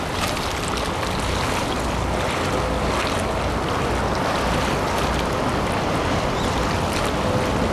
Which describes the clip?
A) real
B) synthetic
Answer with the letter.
A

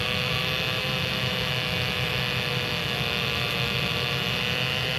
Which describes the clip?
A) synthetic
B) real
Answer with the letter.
A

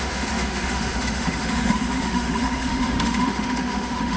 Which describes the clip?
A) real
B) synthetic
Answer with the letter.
B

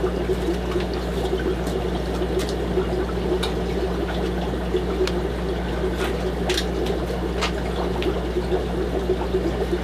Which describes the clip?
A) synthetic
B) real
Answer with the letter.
B